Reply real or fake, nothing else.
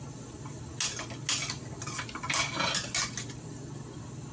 real